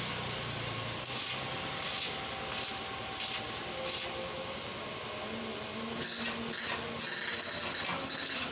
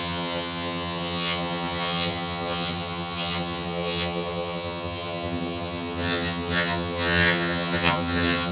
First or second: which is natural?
first